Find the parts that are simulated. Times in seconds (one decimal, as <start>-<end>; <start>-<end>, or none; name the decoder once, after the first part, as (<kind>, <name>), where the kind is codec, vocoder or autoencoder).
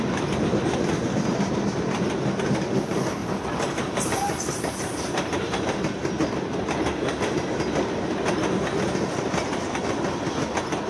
3.2-6.3 (vocoder, BigVGAN v2)